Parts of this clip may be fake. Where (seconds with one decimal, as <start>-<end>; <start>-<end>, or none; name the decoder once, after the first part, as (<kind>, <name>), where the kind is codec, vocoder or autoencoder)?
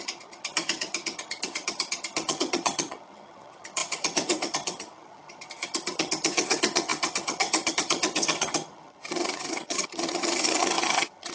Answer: 0.0-11.3 (vocoder, HiFi-GAN)